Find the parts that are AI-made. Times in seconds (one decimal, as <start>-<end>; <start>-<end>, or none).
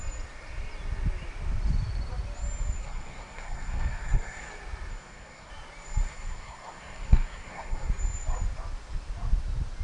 2.8-4.5; 4.9-5.5; 6.0-7.9